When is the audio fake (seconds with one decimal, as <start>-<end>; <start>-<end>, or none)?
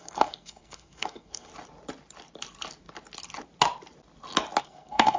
0.0-1.5; 4.6-5.2